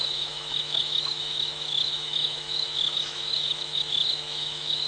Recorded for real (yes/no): no